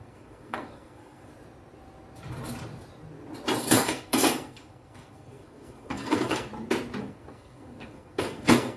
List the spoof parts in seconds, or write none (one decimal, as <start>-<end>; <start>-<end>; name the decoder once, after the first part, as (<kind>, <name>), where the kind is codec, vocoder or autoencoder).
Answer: 0.0-1.3 (codec, SNAC); 3.6-6.5; 7.0-8.8

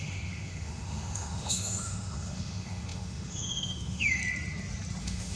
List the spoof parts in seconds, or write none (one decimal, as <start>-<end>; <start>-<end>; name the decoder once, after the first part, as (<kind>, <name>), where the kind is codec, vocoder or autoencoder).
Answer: 0.0-4.2 (autoencoder, DAC-VAE); 5.0-5.4

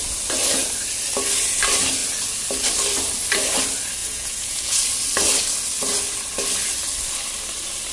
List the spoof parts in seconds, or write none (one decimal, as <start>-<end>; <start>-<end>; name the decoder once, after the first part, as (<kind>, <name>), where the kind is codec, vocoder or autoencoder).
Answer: 4.0-4.8 (vocoder, Vocos)

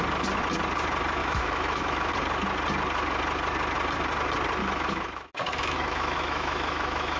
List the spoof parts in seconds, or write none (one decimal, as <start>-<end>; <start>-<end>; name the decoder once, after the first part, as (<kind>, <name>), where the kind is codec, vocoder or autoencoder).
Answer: 1.2-2.1 (autoencoder, DAC-VAE); 4.6-7.2